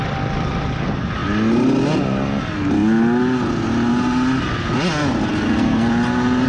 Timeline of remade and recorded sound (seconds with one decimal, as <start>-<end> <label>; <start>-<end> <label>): 0.0-5.3 recorded; 5.3-5.9 remade; 5.9-6.5 recorded

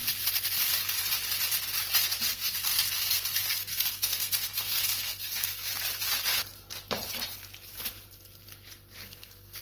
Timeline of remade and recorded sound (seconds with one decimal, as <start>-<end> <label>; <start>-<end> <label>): 0.0-2.3 recorded; 2.3-5.7 remade; 5.7-9.0 recorded; 9.0-9.6 remade

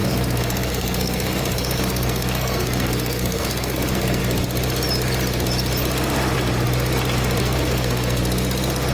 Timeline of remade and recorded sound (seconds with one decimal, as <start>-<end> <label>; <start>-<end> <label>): 0.0-4.2 remade; 4.2-7.4 recorded; 7.4-8.2 remade; 8.2-8.9 recorded